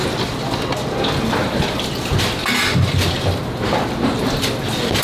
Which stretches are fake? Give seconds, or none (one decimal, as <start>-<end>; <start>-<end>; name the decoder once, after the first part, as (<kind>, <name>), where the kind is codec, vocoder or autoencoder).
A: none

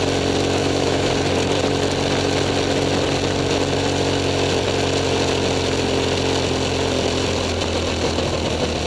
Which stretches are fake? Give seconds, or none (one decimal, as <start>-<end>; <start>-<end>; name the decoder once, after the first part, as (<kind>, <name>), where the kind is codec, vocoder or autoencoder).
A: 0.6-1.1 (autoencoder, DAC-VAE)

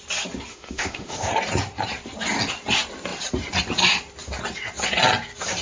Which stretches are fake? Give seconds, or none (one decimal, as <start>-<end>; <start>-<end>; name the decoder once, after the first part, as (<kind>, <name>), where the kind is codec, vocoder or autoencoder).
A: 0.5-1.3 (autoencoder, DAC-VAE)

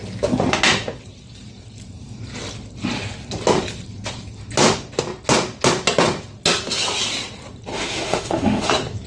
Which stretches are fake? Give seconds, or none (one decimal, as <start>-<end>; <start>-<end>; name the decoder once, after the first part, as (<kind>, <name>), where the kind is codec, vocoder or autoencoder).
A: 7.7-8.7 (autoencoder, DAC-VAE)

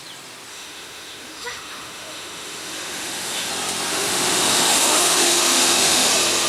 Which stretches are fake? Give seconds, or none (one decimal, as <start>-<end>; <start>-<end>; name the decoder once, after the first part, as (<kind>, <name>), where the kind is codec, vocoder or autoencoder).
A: 0.5-3.5 (autoencoder, DAC-VAE); 3.9-6.1

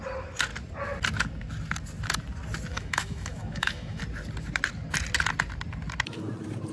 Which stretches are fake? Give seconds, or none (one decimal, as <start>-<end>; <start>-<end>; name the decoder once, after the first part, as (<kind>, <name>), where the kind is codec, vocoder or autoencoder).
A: 2.7-4.0 (autoencoder, DAC-VAE)

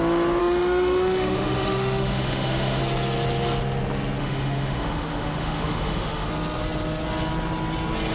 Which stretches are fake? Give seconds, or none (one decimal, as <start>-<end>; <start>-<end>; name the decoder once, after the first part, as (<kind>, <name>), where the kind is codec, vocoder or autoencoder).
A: 0.4-2.8 (autoencoder, DAC-VAE); 4.2-6.3

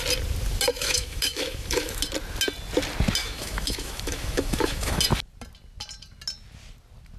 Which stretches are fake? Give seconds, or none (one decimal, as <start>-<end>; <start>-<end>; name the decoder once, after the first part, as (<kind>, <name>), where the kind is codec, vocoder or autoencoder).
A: 0.7-2.0 (autoencoder, DAC-VAE); 3.2-5.0